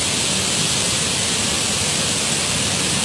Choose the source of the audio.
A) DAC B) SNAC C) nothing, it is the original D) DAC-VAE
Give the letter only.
C